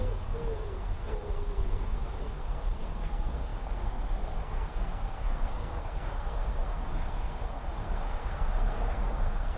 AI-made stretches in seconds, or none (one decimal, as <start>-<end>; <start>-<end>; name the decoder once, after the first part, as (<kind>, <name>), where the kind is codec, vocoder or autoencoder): 0.0-9.6 (codec, SNAC)